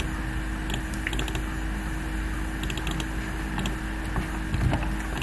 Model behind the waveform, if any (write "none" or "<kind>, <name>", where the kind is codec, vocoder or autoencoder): none